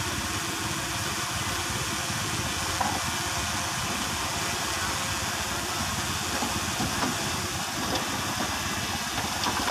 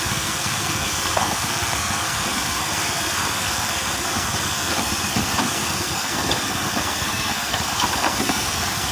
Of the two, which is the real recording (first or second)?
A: first